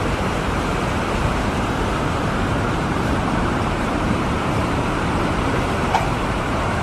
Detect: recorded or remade remade